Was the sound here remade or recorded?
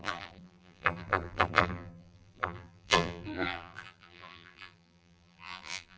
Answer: remade